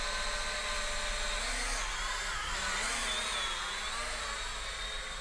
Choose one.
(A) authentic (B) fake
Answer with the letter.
A